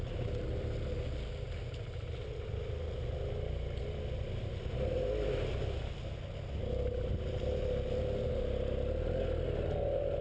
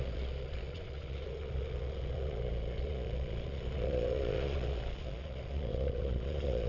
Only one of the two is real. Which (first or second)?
first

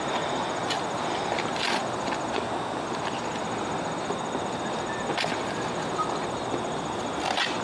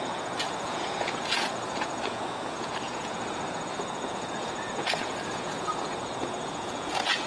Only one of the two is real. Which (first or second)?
first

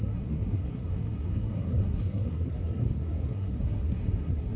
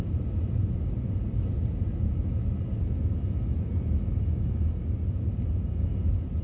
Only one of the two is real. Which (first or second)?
second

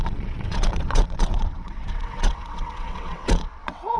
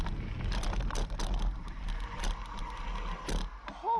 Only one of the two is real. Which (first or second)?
second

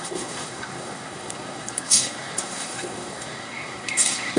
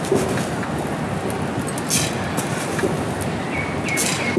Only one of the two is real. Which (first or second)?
second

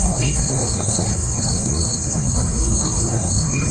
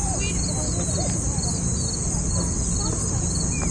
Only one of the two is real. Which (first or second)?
second